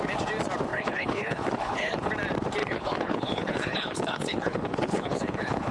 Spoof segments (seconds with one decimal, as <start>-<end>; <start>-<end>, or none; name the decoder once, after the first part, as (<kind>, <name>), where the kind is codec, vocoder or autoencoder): 0.7-2.1 (codec, HILCodec); 2.6-5.7